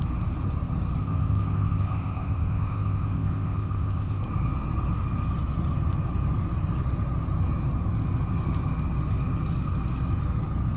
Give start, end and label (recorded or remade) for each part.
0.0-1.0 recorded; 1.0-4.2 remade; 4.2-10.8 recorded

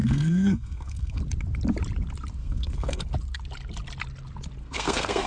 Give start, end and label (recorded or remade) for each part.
0.0-1.2 remade; 1.2-2.4 recorded; 2.4-3.0 remade; 3.0-4.6 recorded; 4.6-5.3 remade

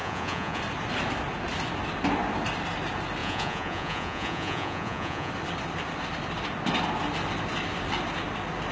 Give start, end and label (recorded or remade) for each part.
0.0-0.6 remade; 0.6-3.2 recorded; 3.2-5.3 remade; 5.3-8.7 recorded

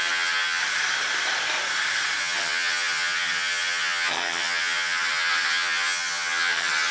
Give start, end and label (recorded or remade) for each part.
0.0-0.6 remade; 0.6-2.2 recorded; 2.2-6.9 remade